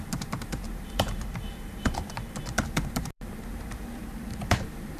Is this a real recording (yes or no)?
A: no